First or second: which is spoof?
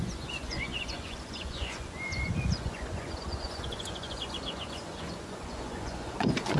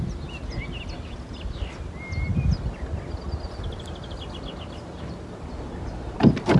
first